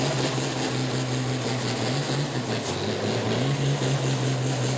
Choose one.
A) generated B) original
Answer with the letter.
B